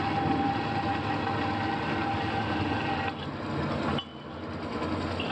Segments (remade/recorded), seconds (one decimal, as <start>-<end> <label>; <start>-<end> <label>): 0.0-5.3 recorded